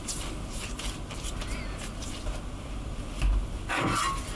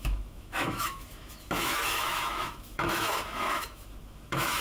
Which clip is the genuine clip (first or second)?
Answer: first